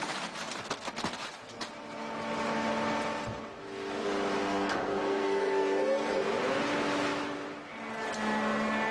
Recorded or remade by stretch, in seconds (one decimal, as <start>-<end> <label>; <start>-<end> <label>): 0.0-4.4 recorded; 4.4-6.2 remade; 6.2-8.9 recorded